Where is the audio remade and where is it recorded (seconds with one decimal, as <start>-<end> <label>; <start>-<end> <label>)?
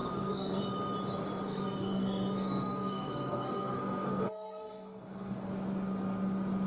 0.0-0.6 remade; 0.6-1.5 recorded; 1.5-5.5 remade; 5.5-6.7 recorded